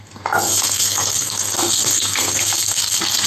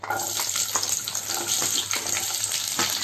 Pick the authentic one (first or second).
second